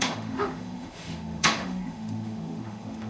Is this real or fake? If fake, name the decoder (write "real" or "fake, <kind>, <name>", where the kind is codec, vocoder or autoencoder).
fake, autoencoder, DAC-VAE